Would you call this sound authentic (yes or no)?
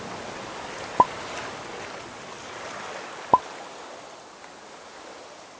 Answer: yes